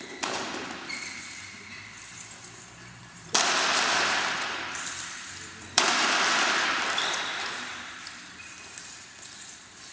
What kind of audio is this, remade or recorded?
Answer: remade